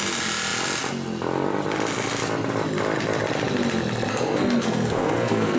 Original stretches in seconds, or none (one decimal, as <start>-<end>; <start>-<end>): 0.0-4.1